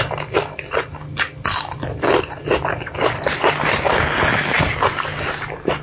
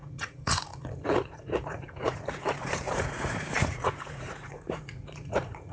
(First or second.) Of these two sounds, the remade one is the second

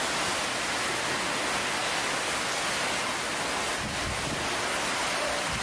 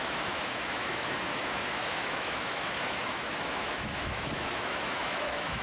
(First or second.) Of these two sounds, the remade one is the second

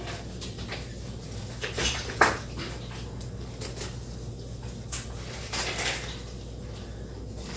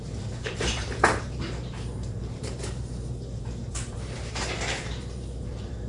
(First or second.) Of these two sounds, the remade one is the second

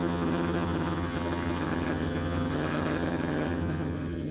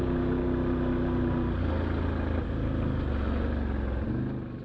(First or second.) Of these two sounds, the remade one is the first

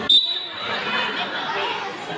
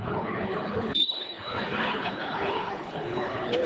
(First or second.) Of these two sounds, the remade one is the second